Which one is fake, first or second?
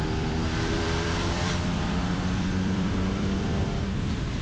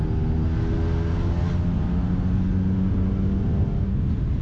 first